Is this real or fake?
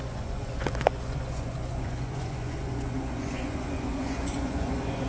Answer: fake